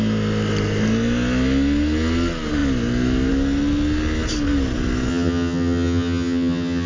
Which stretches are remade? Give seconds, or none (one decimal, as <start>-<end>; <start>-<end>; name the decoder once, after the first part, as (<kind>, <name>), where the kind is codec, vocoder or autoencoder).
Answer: 5.1-6.9 (vocoder, HiFi-GAN)